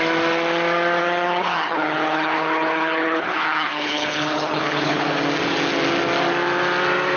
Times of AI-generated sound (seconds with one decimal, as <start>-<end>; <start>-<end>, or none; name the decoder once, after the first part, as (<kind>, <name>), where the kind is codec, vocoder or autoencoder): 1.0-5.2 (codec, HILCodec)